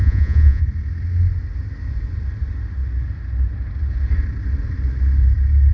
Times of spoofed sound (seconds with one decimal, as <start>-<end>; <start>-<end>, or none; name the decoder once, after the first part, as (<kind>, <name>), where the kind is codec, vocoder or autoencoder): 0.0-0.6 (vocoder, Vocos)